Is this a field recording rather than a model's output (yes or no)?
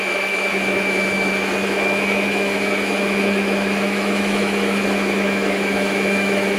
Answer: no